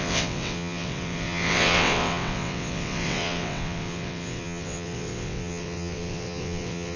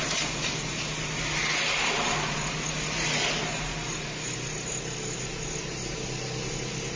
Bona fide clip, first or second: second